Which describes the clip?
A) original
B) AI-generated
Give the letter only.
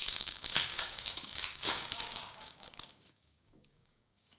B